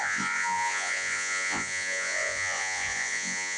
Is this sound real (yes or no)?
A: no